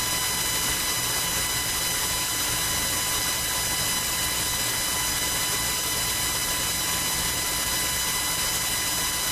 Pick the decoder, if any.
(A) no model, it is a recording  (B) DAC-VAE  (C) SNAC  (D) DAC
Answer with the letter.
A